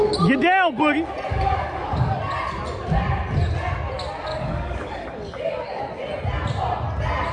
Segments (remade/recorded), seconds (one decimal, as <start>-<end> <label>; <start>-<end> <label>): 0.0-1.3 recorded; 1.3-2.1 remade; 2.1-4.3 recorded; 4.3-5.8 remade; 5.8-7.3 recorded